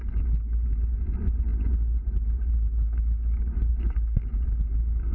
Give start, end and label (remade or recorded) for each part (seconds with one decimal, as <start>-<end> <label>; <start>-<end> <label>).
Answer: 0.0-5.1 recorded